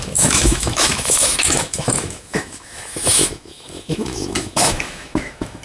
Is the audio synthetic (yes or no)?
yes